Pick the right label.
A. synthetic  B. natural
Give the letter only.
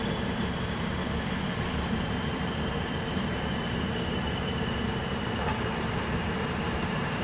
A